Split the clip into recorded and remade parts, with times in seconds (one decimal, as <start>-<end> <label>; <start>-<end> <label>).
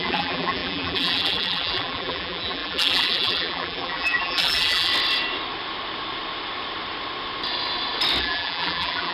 0.0-4.9 remade; 4.9-8.2 recorded; 8.2-9.1 remade